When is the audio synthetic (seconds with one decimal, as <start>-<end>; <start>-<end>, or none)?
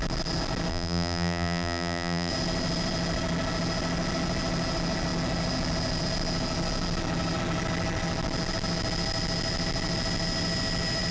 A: 0.7-2.3